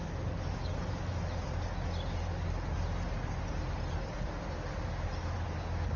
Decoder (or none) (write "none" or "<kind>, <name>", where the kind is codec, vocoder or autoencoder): none